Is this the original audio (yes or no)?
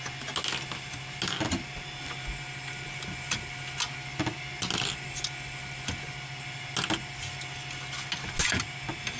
yes